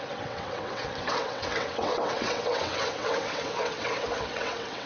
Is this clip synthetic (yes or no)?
yes